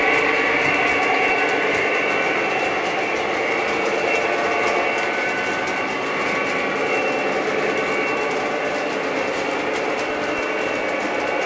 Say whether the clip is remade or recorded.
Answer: recorded